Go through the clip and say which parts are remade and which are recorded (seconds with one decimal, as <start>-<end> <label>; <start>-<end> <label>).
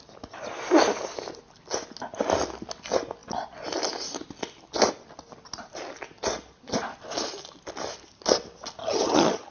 0.0-8.8 recorded; 8.8-9.5 remade